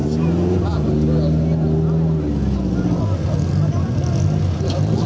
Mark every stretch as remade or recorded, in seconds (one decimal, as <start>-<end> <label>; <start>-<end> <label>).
0.0-5.1 recorded